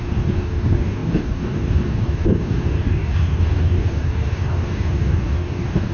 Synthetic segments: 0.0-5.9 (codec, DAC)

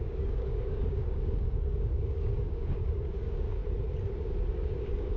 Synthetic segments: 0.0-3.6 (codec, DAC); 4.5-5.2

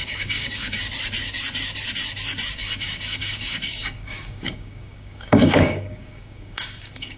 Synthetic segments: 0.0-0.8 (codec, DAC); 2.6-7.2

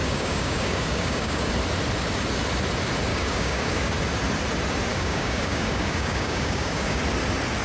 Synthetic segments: 0.0-1.5 (codec, DAC); 3.1-3.9; 4.9-7.0

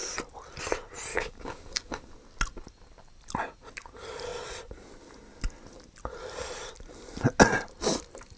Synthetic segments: 1.1-2.1 (codec, DAC)

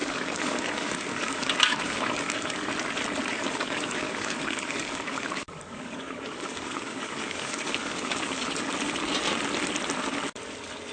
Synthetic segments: 0.0-2.7 (codec, DAC); 3.3-8.4